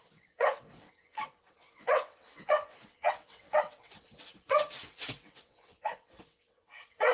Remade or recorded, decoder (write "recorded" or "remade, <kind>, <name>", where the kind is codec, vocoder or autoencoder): remade, vocoder, WaveNeXt